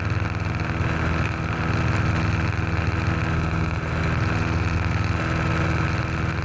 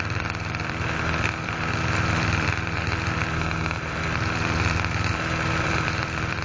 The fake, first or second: second